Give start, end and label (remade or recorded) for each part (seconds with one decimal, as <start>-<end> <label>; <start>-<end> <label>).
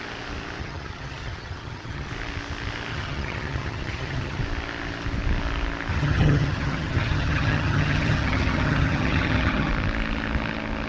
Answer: 0.0-0.6 recorded; 0.6-2.1 remade; 2.1-2.9 recorded; 2.9-4.4 remade; 4.4-5.9 recorded; 5.9-9.7 remade; 9.7-10.9 recorded